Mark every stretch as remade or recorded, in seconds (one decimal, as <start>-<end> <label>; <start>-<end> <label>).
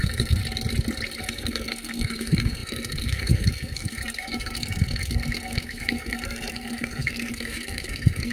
0.0-0.4 remade; 0.4-1.2 recorded; 1.2-8.3 remade